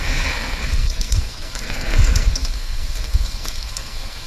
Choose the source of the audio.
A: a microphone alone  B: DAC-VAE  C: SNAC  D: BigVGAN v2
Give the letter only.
C